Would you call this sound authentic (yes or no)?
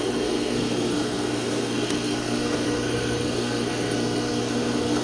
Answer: no